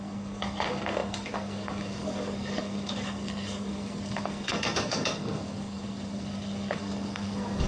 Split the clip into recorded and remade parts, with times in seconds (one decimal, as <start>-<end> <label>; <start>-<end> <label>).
0.0-7.7 remade